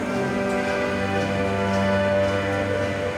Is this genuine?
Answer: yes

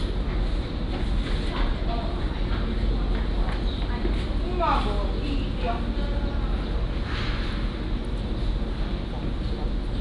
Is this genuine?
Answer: yes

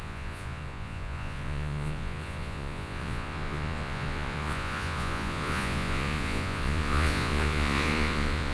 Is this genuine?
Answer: no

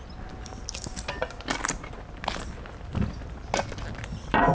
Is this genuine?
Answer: yes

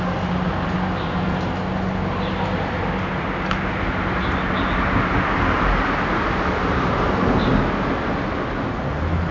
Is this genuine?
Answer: yes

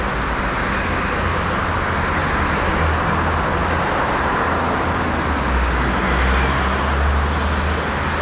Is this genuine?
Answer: yes